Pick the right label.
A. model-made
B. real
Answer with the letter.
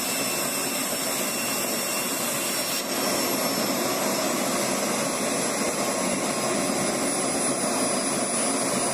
B